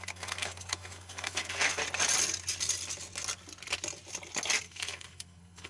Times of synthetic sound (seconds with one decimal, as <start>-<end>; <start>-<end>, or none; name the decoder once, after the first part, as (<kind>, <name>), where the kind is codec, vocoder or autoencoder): 0.0-1.8 (codec, SNAC); 4.6-5.7